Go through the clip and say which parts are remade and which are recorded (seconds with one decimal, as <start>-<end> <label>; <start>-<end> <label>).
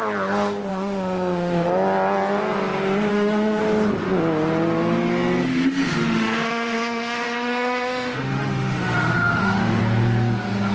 0.0-0.7 recorded; 0.7-1.7 remade; 1.7-3.1 recorded; 3.1-3.6 remade; 3.6-5.5 recorded; 5.5-9.8 remade; 9.8-10.7 recorded